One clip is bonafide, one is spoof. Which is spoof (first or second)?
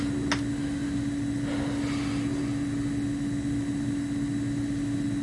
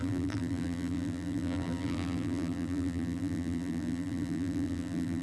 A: second